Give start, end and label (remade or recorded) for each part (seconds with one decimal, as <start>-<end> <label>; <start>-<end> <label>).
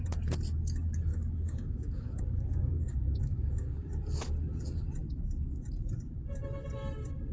0.0-1.1 recorded; 1.1-4.0 remade; 4.0-7.3 recorded